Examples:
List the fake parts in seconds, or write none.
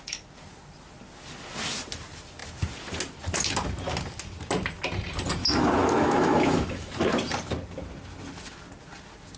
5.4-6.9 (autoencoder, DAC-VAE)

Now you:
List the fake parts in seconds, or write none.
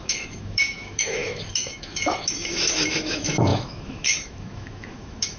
0.0-5.4 (autoencoder, DAC-VAE)